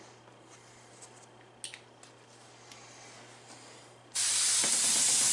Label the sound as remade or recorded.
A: recorded